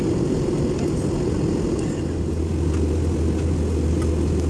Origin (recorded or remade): recorded